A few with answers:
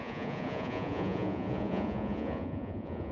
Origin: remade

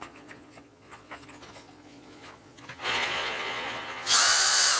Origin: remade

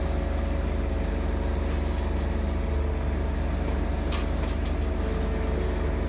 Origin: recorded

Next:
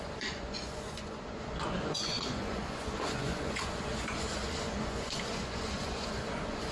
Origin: remade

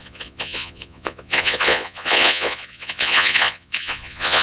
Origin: remade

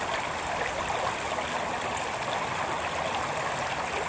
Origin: recorded